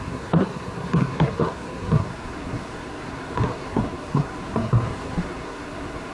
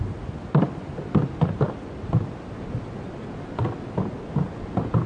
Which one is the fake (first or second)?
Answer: first